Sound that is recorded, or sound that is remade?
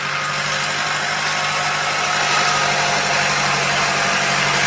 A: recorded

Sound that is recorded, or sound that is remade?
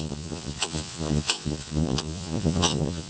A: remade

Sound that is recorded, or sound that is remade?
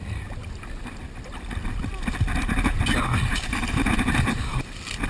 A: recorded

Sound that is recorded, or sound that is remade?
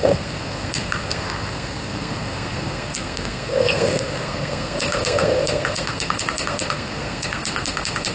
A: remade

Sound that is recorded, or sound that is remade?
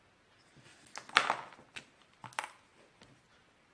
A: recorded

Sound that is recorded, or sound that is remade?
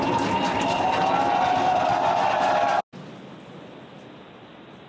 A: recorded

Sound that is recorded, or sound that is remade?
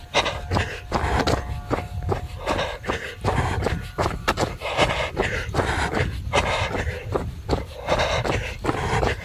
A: recorded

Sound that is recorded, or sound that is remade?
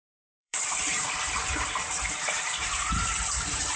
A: remade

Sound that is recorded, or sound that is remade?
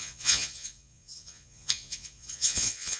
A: remade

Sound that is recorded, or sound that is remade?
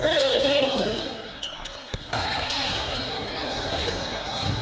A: remade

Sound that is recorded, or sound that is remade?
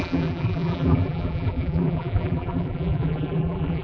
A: remade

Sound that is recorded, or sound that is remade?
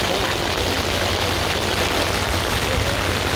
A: recorded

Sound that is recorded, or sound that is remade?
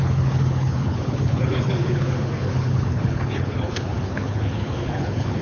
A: remade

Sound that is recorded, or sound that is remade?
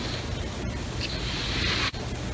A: recorded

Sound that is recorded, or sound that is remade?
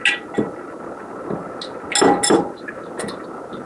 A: recorded